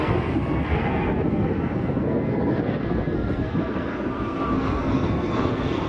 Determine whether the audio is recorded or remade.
remade